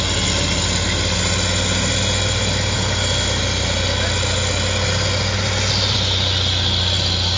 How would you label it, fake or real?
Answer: real